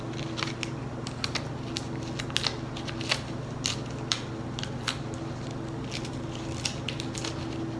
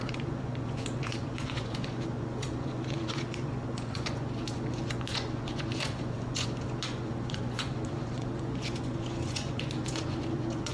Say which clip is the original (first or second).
first